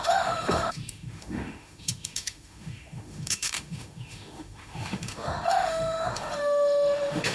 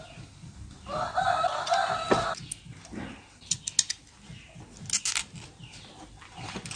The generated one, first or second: first